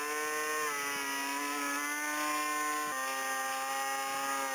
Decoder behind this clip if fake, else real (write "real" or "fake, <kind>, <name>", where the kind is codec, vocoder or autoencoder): real